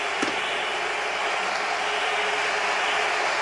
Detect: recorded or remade recorded